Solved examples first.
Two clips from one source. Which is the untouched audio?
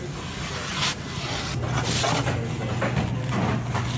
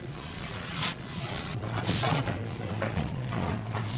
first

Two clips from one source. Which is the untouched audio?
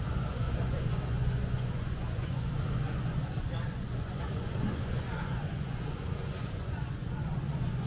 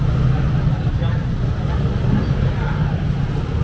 second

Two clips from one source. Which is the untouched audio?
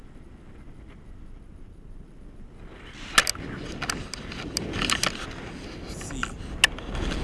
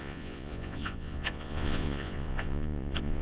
first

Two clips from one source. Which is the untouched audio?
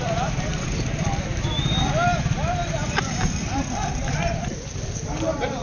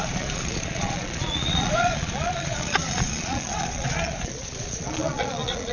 first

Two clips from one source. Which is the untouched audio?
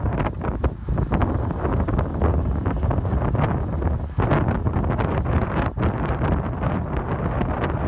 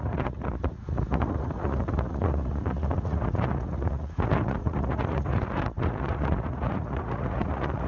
first